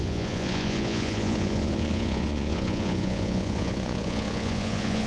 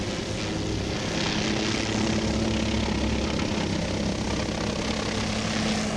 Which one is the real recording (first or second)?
second